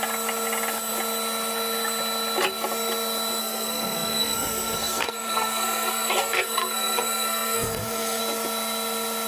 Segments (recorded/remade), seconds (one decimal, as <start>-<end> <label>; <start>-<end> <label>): 0.0-3.4 recorded; 3.4-8.2 remade; 8.2-9.3 recorded